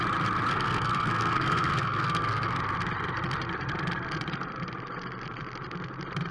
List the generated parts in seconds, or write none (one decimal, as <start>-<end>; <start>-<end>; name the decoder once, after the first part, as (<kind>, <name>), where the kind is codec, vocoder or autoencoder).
0.5-2.6 (codec, SNAC)